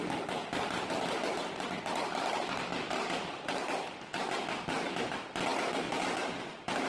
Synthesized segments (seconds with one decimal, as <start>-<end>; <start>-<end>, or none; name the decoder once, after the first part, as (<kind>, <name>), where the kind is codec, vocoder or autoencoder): none